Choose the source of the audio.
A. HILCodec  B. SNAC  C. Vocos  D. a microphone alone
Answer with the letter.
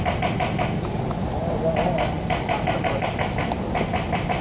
D